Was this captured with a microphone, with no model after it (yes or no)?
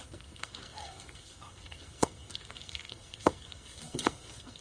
no